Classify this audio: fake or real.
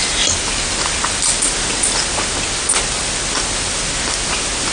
real